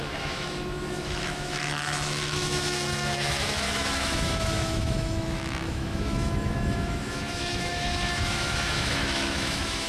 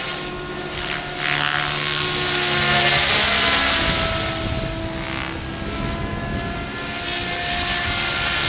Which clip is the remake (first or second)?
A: first